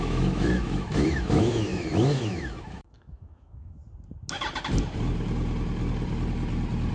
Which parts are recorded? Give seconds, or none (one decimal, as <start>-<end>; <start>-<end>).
3.8-6.9